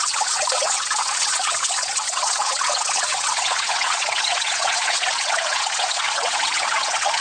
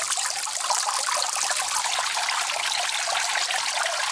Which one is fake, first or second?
first